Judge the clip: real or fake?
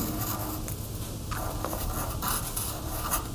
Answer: real